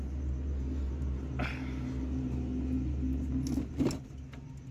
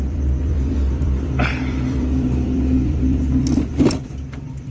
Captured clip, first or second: first